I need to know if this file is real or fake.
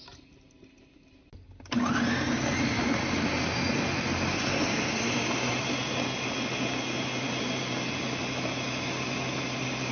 real